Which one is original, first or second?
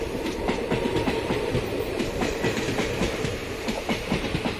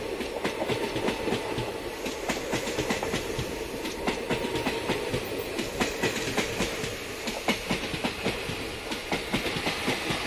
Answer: second